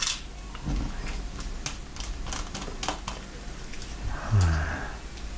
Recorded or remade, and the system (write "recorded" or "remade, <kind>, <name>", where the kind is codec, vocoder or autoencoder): recorded